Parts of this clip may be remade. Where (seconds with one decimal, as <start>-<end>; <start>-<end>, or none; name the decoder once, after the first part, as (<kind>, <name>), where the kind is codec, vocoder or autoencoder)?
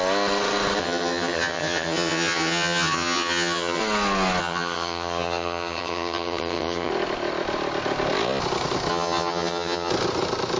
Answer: 0.8-3.8 (vocoder, HiFi-GAN); 4.4-6.9; 8.9-9.9